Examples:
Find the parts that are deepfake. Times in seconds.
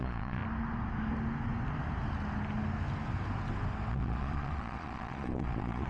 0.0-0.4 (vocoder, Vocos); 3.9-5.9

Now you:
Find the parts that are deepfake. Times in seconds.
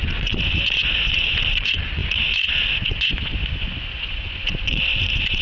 0.0-5.4 (vocoder, Vocos)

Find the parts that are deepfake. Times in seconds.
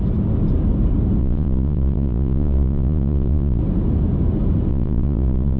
1.2-3.6 (vocoder, Vocos); 4.7-5.6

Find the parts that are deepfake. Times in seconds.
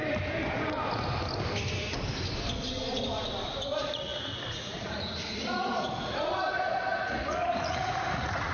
3.5-8.5 (vocoder, Vocos)